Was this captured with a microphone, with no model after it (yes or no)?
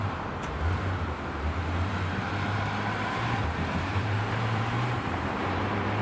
no